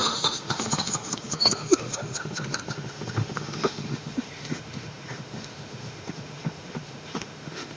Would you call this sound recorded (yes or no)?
no